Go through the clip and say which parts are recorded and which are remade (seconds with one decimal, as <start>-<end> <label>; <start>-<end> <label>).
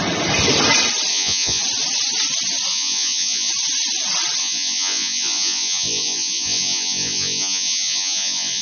0.0-1.1 recorded; 1.1-1.6 remade; 1.6-2.7 recorded; 2.7-3.5 remade; 3.5-4.4 recorded; 4.4-8.6 remade